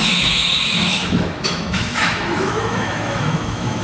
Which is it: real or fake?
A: fake